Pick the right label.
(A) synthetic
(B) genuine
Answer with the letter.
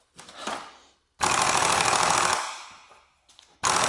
B